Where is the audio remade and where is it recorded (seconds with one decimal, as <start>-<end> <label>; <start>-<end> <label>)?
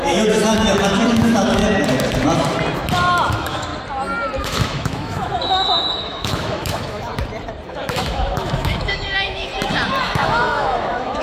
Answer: 0.0-1.6 remade; 1.6-3.3 recorded; 3.3-3.7 remade; 3.7-4.4 recorded; 4.4-7.1 remade; 7.1-7.7 recorded; 7.7-9.5 remade; 9.5-10.0 recorded; 10.0-11.2 remade